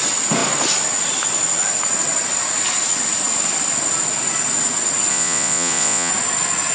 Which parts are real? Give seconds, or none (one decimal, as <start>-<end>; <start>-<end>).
0.0-5.1; 6.1-6.7